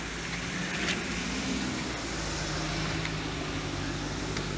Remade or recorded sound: recorded